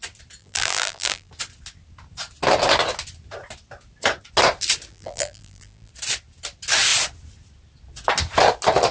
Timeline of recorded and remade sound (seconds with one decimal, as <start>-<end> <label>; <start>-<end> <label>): 0.0-0.4 recorded; 0.4-1.3 remade; 1.3-4.9 recorded; 4.9-5.9 remade; 5.9-8.9 recorded